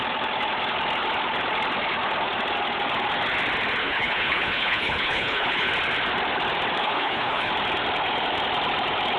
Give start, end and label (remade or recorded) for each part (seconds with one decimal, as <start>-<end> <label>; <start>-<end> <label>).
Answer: 0.0-3.8 recorded; 3.8-5.7 remade; 5.7-6.8 recorded; 6.8-7.5 remade; 7.5-9.2 recorded